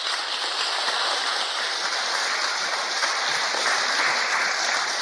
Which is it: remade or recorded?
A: recorded